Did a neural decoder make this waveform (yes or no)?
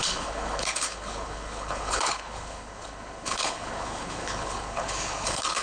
yes